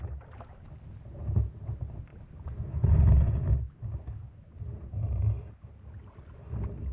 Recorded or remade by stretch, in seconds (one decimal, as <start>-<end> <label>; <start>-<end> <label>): 0.0-6.9 recorded

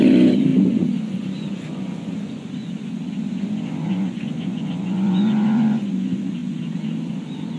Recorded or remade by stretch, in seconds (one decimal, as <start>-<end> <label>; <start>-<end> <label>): 0.0-7.6 remade

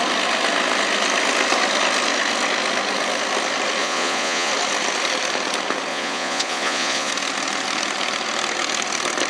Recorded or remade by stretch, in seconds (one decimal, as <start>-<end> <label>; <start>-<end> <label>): 0.0-3.8 recorded; 3.8-4.5 remade; 4.5-5.9 recorded; 5.9-7.1 remade; 7.1-9.3 recorded